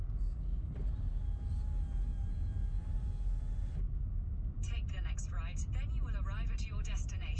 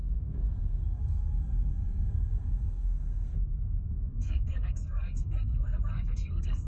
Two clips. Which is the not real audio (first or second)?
second